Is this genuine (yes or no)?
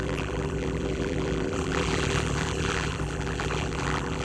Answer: no